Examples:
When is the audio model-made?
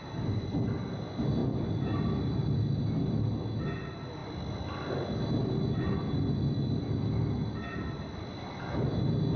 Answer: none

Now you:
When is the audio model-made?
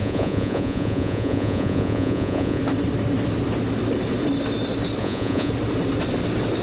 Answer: 0.0-2.6 (vocoder, Vocos); 5.0-5.5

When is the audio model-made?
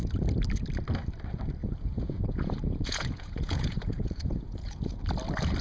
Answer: 1.6-5.0 (vocoder, Vocos)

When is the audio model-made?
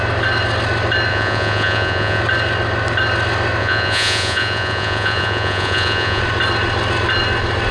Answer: 1.1-2.2 (vocoder, Vocos); 3.6-6.2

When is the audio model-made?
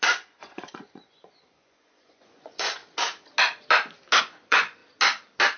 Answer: 0.0-2.8 (vocoder, Vocos); 4.2-4.8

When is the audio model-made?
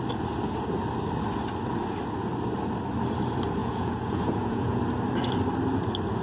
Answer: 3.6-4.8 (vocoder, Vocos)